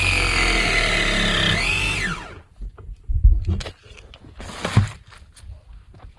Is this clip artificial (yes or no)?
no